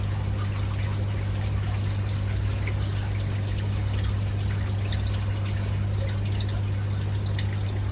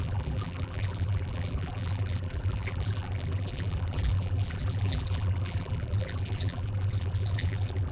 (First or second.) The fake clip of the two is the second